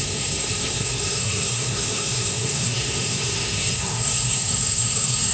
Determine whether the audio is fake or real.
fake